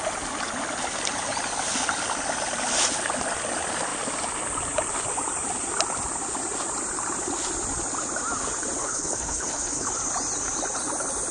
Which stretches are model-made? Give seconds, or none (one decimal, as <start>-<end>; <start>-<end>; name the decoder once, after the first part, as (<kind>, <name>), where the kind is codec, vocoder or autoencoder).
8.8-9.9 (codec, HILCodec)